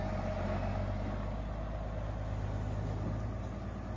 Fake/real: real